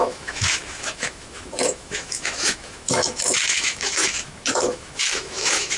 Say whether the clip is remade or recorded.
remade